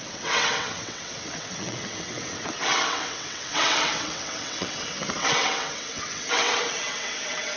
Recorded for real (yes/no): no